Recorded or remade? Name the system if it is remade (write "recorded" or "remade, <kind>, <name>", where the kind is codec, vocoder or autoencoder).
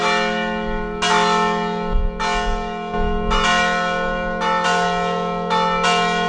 recorded